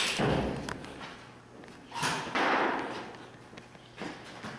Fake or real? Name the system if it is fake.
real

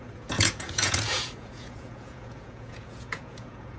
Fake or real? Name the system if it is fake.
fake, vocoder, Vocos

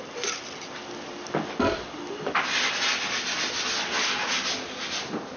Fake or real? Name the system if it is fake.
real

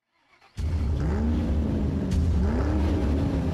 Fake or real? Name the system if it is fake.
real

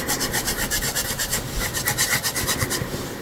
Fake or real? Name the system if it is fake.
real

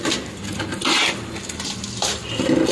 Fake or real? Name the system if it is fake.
real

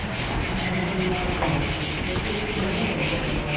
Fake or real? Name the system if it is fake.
real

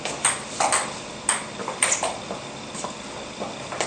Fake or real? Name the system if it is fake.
real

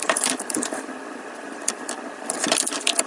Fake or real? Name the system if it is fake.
fake, vocoder, BigVGAN v2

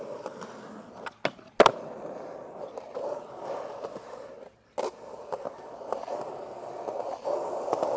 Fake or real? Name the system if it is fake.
real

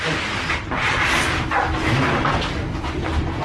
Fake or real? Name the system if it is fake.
real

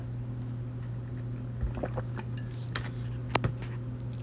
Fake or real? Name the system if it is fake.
real